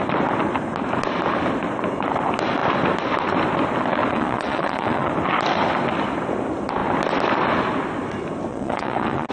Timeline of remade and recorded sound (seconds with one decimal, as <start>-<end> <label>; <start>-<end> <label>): 0.0-4.1 recorded; 4.1-5.1 remade; 5.1-8.5 recorded; 8.5-9.3 remade